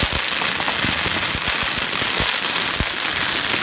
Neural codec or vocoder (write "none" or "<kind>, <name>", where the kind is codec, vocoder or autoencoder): none